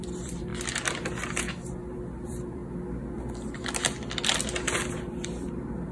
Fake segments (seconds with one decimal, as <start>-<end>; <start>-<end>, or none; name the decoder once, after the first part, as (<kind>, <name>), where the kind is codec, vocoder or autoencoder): 0.0-0.5 (vocoder, BigVGAN v2); 1.5-2.6; 4.9-5.9